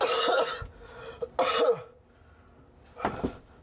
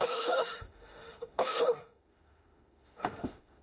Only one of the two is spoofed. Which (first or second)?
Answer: second